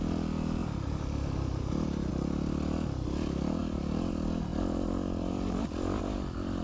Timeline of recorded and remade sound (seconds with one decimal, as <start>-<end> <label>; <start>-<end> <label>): 0.0-0.6 recorded; 0.6-2.1 remade; 2.1-3.6 recorded; 3.6-4.1 remade; 4.1-4.5 recorded; 4.5-6.0 remade; 6.0-6.6 recorded